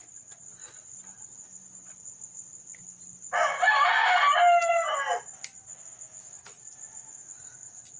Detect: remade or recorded recorded